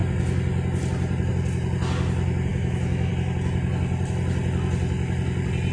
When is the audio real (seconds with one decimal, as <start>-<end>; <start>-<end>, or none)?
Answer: 0.0-2.5; 3.1-5.7